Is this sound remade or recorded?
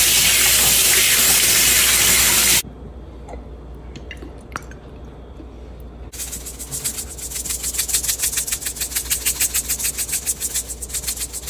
recorded